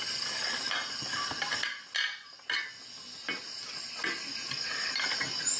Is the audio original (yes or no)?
yes